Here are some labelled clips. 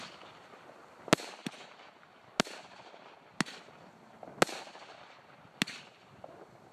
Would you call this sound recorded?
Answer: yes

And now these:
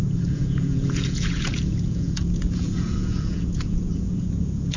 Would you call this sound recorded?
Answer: no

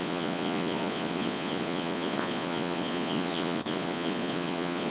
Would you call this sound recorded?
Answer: no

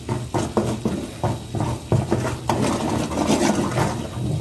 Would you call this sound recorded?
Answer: yes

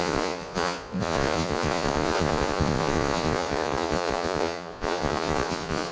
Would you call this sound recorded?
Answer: no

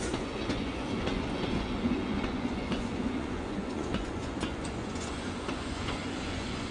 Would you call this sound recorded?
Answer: no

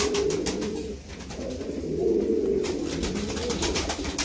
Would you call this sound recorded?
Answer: yes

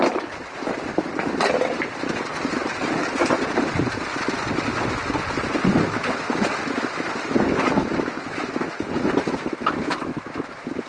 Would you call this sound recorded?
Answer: yes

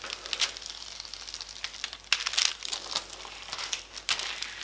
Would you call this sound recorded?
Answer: yes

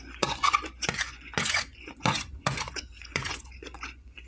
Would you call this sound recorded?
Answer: no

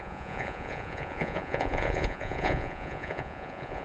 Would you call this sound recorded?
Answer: no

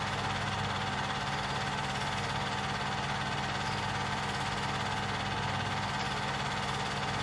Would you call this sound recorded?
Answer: yes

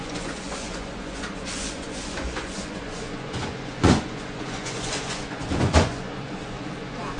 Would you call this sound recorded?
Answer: no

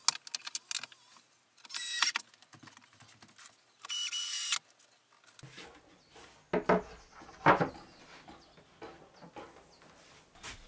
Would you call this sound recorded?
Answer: yes